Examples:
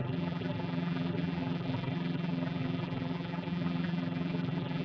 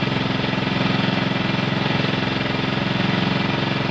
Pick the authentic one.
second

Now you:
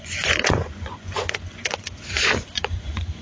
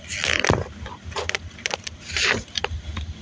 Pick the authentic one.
second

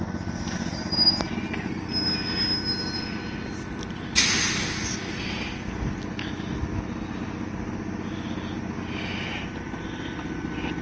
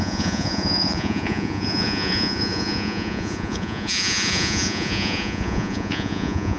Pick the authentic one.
first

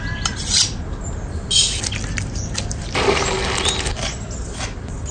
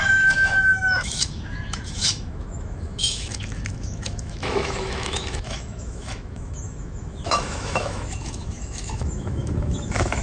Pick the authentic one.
first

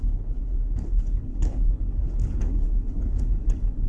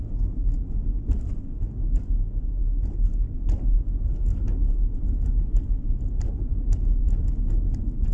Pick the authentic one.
second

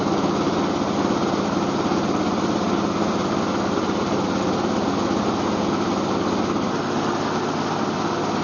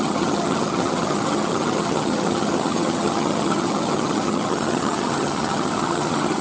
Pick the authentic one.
first